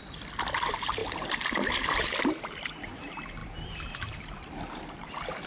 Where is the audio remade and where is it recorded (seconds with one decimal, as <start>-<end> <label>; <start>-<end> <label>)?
0.0-5.5 remade